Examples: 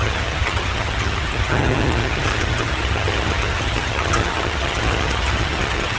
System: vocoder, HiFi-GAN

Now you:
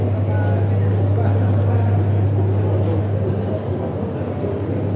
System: none